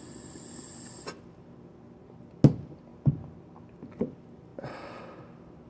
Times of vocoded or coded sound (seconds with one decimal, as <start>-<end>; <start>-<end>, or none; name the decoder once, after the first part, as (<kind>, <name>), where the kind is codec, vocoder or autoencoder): 2.9-3.6 (vocoder, BigVGAN v2)